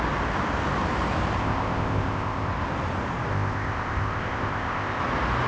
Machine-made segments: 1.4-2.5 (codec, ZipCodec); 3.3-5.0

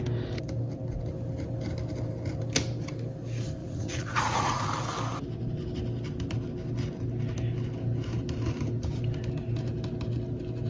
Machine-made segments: 3.6-4.6 (vocoder, Vocos)

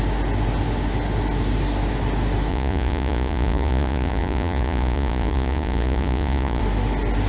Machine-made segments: 2.5-6.6 (vocoder, Vocos)

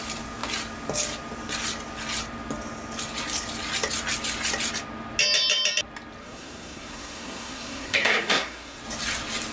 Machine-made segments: 6.2-8.8 (codec, SNAC)

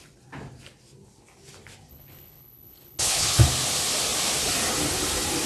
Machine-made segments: 1.9-3.4 (codec, HILCodec)

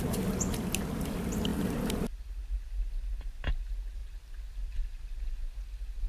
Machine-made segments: none

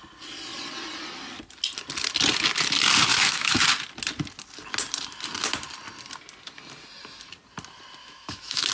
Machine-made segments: 3.1-3.6 (autoencoder, DAC-VAE); 8.0-8.7